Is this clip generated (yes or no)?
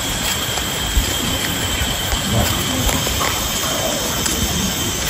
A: yes